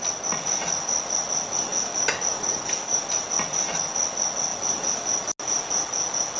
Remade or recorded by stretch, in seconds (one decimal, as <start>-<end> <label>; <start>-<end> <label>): 0.0-2.5 recorded; 2.5-3.0 remade; 3.0-6.4 recorded